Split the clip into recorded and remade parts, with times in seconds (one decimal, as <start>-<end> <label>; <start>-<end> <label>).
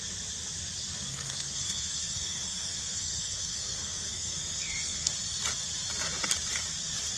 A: 0.0-1.1 recorded; 1.1-5.1 remade; 5.1-7.2 recorded